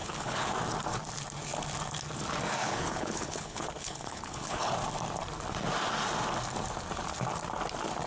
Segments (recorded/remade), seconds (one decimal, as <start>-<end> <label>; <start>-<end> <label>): 0.0-0.5 remade; 0.5-2.6 recorded; 2.6-4.7 remade; 4.7-8.1 recorded